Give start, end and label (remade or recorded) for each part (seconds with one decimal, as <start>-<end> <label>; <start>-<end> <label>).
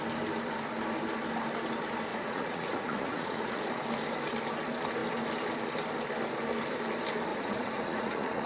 0.0-2.1 recorded; 2.1-3.6 remade; 3.6-7.3 recorded; 7.3-8.5 remade